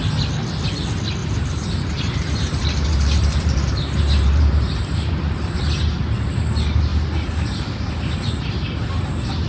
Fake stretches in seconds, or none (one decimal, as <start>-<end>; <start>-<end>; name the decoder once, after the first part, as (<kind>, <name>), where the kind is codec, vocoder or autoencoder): 1.2-5.6 (vocoder, BigVGAN v2); 6.9-7.9; 8.8-9.5